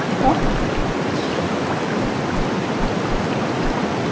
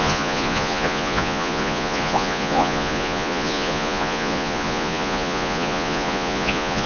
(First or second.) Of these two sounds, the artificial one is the second